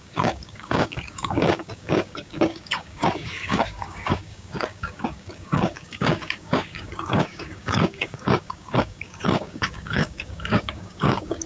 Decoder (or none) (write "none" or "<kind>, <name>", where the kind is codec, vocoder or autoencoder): codec, DAC